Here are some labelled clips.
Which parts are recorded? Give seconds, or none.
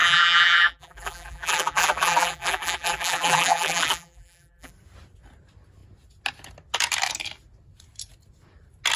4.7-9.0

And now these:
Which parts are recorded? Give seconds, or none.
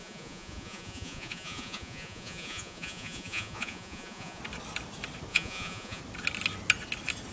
4.4-5.3; 6.0-7.3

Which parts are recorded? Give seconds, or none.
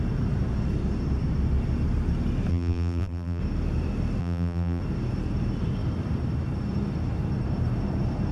0.0-2.5; 3.4-4.2; 4.8-8.3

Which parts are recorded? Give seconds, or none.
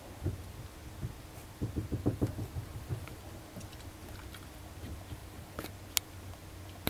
0.0-1.8; 3.2-5.2; 5.7-6.9